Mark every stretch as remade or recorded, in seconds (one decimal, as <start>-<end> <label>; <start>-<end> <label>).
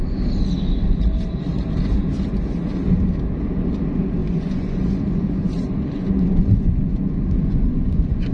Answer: 0.0-4.2 recorded; 4.2-8.3 remade